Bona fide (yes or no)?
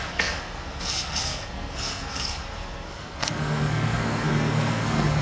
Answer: no